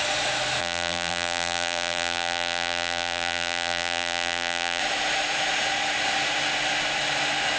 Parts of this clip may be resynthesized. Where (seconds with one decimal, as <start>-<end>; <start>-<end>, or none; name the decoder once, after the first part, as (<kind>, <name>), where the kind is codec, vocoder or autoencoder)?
0.6-4.8 (vocoder, BigVGAN v2)